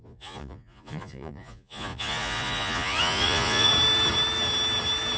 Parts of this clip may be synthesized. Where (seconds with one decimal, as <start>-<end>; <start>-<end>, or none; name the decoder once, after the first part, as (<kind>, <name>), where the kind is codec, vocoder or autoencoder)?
0.0-3.7 (vocoder, Vocos)